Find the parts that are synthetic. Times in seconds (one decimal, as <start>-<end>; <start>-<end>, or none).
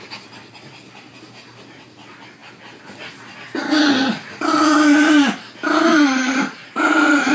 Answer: 5.9-7.3